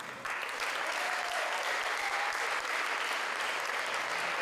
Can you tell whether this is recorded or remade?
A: recorded